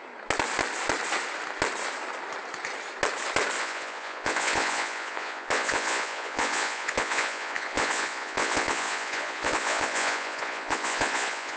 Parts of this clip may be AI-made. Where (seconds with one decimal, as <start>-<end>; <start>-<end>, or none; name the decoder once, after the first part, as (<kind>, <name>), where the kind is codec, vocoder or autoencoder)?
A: 3.6-11.6 (vocoder, Vocos)